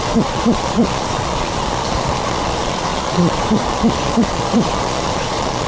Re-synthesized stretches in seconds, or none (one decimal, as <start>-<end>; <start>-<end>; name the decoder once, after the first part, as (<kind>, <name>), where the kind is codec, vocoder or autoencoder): 0.0-5.7 (vocoder, Vocos)